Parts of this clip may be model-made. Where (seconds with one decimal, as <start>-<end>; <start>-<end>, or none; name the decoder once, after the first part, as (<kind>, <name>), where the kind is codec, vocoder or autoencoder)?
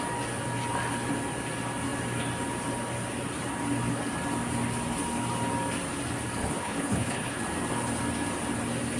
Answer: 6.4-7.4 (codec, HILCodec)